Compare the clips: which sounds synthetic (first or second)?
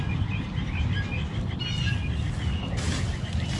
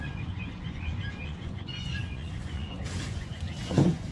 second